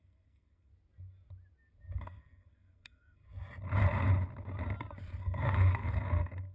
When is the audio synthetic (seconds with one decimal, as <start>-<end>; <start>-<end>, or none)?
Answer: 0.0-0.7; 2.0-3.2; 5.2-6.5